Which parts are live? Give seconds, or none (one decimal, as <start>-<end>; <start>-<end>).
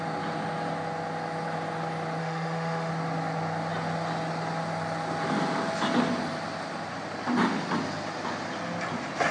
0.0-2.2; 2.9-9.3